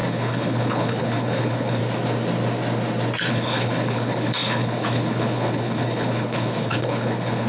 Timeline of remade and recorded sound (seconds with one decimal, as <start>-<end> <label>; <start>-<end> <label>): 0.0-1.8 remade; 1.8-3.3 recorded; 3.3-7.5 remade